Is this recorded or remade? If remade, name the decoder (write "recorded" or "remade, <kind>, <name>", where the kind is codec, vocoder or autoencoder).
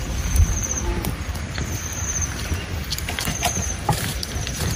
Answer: remade, vocoder, BigVGAN v2